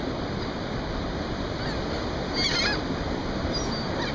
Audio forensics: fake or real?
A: real